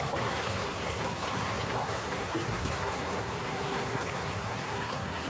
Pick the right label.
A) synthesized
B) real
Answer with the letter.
A